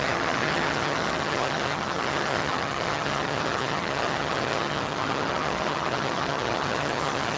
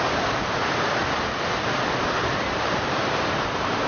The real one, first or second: second